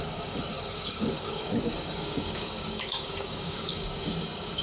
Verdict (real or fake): fake